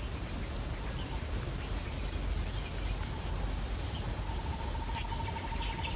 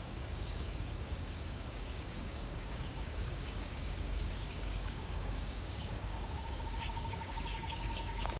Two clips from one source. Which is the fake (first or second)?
second